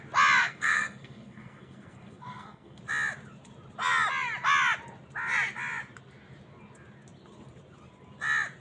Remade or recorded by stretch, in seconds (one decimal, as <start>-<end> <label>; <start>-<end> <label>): 0.0-0.4 recorded; 0.4-2.8 remade; 2.8-8.6 recorded